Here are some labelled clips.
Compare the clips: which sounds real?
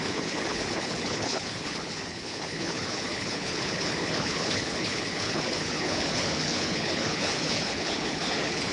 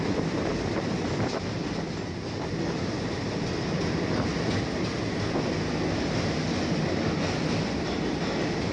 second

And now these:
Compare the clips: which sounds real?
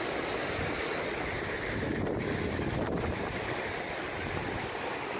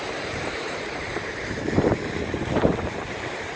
first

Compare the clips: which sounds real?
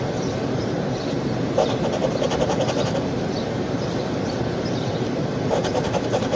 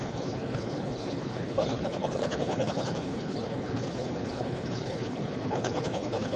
first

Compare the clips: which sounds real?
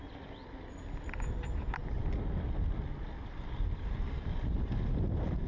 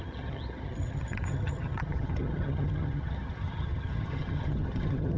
first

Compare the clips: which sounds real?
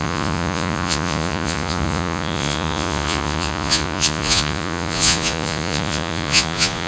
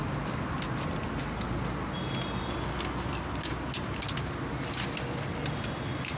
second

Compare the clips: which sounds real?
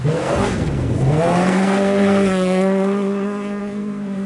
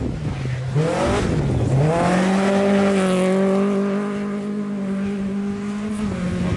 second